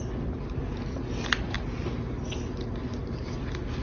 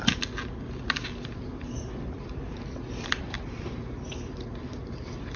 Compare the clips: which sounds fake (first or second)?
second